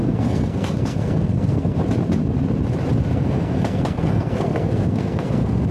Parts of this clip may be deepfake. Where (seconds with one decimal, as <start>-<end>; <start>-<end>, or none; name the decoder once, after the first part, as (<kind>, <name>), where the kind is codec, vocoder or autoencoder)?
0.0-1.8 (codec, SNAC); 3.1-5.7